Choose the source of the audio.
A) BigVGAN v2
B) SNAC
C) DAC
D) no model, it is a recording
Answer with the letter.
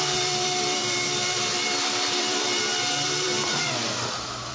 A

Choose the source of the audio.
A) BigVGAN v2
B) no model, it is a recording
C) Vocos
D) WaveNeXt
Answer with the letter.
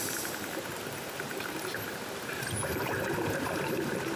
A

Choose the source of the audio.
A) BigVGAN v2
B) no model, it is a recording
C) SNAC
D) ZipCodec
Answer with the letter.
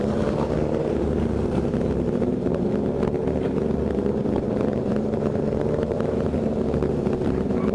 A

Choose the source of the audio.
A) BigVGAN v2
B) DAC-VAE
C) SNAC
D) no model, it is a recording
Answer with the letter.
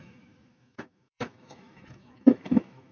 B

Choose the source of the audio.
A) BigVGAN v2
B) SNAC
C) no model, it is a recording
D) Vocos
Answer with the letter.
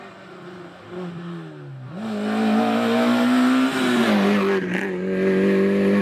C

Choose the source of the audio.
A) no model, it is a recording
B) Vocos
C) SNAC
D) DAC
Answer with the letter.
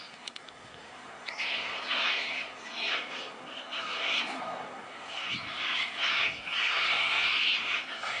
C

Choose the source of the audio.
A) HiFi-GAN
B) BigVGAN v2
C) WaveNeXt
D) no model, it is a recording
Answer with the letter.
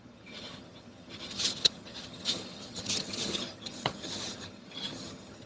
A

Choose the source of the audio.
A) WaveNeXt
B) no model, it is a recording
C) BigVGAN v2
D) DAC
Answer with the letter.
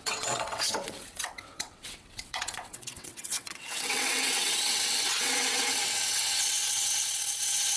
A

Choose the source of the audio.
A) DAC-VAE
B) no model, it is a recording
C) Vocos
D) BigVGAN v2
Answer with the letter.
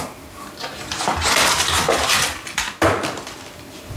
D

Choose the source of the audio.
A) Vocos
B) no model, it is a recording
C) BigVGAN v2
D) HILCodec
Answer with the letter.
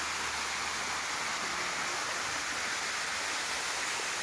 B